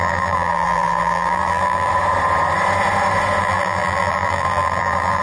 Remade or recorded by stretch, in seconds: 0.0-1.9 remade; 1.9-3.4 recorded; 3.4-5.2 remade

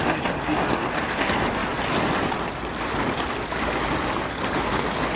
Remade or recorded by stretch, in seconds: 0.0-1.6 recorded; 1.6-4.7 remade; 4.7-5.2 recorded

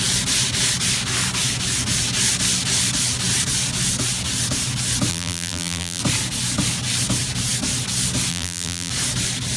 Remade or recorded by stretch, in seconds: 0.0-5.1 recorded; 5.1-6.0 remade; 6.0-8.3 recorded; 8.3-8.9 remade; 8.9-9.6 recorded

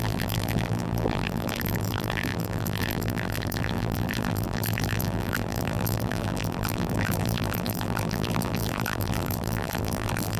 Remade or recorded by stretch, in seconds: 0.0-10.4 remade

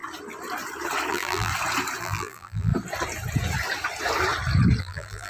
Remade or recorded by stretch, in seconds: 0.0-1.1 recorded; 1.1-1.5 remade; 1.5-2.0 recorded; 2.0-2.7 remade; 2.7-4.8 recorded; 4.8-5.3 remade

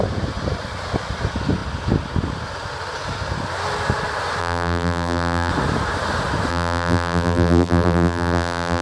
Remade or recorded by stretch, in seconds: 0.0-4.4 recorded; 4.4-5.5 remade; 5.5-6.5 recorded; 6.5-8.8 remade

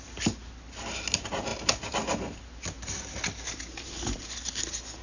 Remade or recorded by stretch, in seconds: 0.0-1.5 recorded; 1.5-2.4 remade; 2.4-5.0 recorded

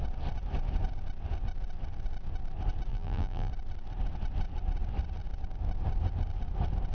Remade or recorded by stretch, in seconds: 0.0-2.9 recorded; 2.9-3.5 remade; 3.5-6.9 recorded